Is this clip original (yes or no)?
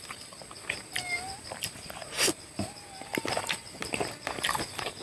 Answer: yes